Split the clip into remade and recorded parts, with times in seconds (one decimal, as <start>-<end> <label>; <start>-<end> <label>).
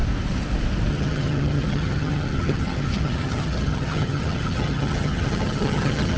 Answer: 0.0-0.9 recorded; 0.9-6.2 remade